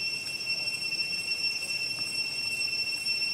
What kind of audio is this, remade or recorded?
recorded